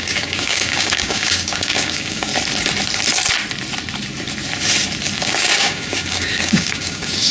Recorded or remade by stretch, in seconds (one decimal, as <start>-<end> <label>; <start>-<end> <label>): 0.0-2.3 remade; 2.3-5.2 recorded; 5.2-7.3 remade